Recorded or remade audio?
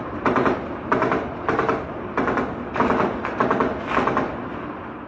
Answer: recorded